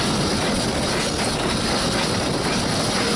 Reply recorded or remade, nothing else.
recorded